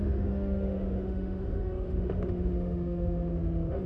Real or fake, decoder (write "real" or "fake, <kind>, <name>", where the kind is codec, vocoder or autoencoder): fake, autoencoder, DAC-VAE